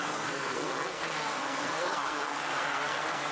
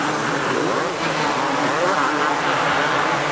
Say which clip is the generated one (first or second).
first